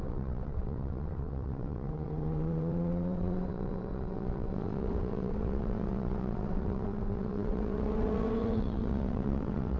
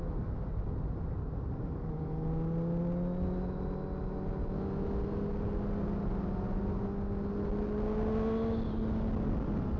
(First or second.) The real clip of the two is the second